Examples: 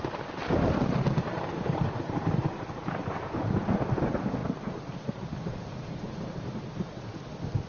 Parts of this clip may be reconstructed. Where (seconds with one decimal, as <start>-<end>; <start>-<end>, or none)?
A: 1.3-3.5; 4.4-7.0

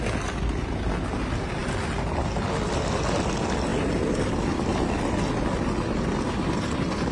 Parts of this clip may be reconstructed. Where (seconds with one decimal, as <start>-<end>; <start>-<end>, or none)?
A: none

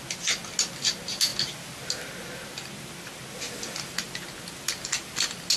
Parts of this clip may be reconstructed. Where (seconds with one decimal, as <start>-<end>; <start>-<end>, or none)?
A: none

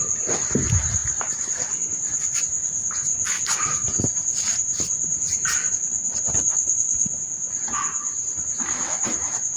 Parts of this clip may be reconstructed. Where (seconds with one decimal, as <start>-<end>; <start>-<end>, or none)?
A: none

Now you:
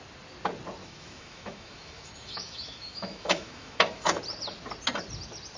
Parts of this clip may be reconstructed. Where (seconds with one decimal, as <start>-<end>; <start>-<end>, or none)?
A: 0.8-4.2

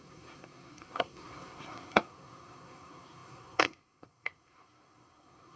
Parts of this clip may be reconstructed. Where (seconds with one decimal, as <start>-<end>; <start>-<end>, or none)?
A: 0.0-5.6

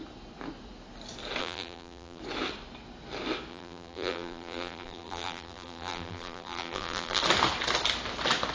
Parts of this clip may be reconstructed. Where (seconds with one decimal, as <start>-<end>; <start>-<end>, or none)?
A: 1.4-2.2; 3.5-7.2

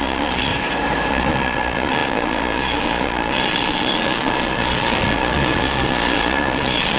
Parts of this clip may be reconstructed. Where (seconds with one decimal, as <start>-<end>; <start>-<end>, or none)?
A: 0.0-0.5; 1.1-7.0